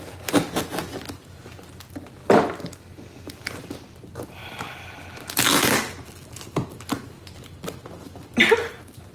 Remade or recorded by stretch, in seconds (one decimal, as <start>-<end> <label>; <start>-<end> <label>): 0.0-9.1 recorded